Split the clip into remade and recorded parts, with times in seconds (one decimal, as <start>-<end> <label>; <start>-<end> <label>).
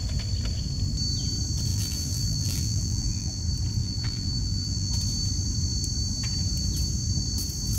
0.0-1.7 recorded; 1.7-3.4 remade; 3.4-3.8 recorded; 3.8-4.9 remade; 4.9-7.8 recorded